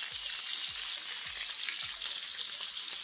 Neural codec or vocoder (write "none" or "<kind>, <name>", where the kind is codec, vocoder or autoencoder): none